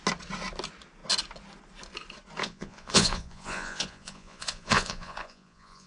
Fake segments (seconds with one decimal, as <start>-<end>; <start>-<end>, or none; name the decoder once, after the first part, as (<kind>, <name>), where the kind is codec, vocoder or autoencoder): 2.4-5.9 (vocoder, Vocos)